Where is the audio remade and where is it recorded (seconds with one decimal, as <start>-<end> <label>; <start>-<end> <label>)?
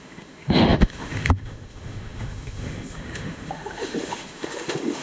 0.0-5.0 remade